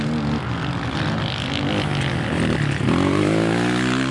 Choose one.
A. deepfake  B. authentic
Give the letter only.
B